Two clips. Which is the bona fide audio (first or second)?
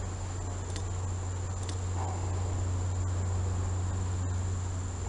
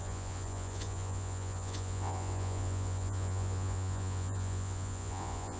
first